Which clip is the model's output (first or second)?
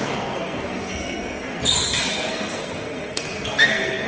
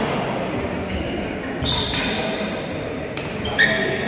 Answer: first